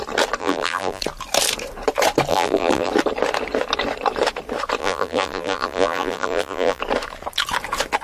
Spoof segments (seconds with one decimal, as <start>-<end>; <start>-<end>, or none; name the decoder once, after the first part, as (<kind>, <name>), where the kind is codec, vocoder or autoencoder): 0.4-1.0 (vocoder, BigVGAN v2); 2.3-2.9; 4.8-6.8